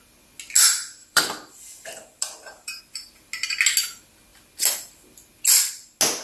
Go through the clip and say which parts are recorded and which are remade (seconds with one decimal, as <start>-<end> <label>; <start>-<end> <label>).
0.0-1.0 recorded; 1.0-2.8 remade; 2.8-6.2 recorded